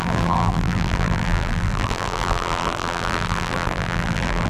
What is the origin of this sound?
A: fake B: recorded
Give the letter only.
A